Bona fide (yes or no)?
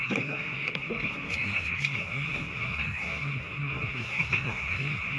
no